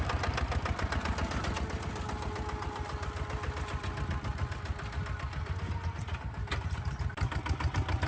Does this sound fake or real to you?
real